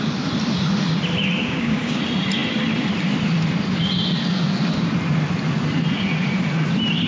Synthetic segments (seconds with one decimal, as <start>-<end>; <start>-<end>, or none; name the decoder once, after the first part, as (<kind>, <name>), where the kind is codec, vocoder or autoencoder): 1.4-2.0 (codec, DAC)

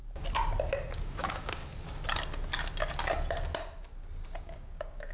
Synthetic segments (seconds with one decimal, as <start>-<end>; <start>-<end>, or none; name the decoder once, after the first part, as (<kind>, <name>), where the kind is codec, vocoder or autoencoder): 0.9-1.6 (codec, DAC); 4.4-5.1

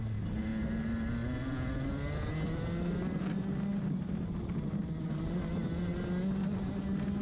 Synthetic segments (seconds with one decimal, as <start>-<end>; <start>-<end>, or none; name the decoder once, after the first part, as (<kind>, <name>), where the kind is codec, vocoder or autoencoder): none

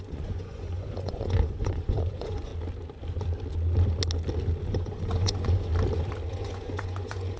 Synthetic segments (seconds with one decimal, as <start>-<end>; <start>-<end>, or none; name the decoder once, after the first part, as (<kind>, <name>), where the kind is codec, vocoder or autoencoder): 0.0-2.5 (vocoder, Vocos); 4.7-5.7; 6.3-7.4